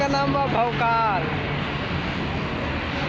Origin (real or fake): real